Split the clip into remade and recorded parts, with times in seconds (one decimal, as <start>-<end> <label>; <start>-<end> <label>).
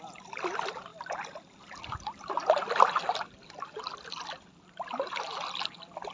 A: 0.0-6.1 recorded